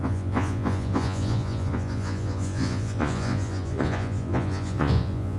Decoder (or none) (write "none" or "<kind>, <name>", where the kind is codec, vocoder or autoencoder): vocoder, Vocos